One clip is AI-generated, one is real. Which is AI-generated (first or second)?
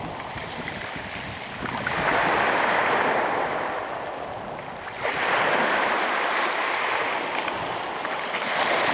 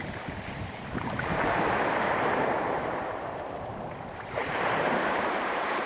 second